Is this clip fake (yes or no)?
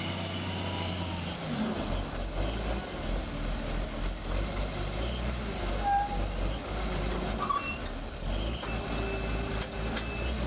no